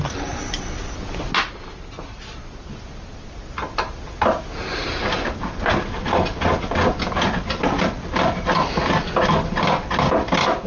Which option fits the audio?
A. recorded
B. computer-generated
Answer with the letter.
A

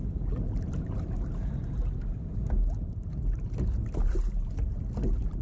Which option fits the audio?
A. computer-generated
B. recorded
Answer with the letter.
B